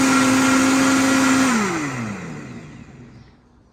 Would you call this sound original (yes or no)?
yes